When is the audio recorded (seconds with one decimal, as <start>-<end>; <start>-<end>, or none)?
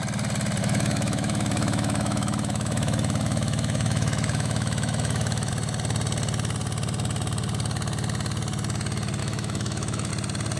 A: 0.0-0.6; 5.5-9.2; 10.1-10.6